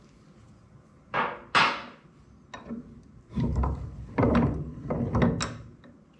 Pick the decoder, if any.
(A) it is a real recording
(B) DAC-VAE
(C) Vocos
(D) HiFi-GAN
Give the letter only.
A